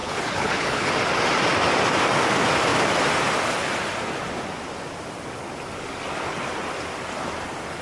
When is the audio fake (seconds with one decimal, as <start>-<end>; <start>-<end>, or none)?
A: 0.0-0.9